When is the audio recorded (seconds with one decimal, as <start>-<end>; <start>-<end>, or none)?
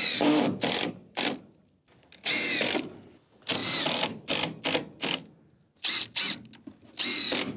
0.0-7.6